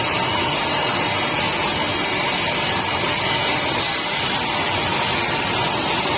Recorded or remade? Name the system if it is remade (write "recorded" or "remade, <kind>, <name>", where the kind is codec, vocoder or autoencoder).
recorded